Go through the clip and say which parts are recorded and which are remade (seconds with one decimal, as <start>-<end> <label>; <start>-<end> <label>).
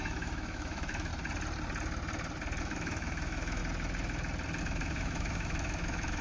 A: 0.0-1.1 remade; 1.1-2.6 recorded; 2.6-3.6 remade; 3.6-4.6 recorded; 4.6-6.2 remade